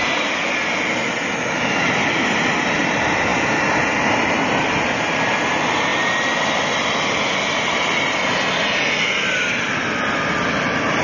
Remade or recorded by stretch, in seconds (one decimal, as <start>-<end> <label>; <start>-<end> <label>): 0.0-11.0 recorded